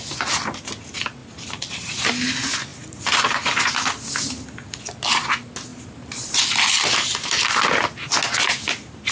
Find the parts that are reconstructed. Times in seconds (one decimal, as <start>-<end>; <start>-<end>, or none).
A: 1.2-2.1; 2.7-3.7; 5.7-7.3